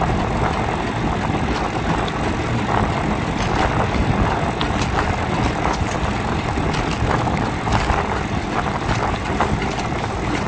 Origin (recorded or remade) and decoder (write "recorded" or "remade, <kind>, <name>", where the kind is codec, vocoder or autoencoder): recorded